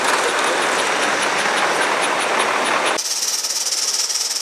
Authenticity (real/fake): real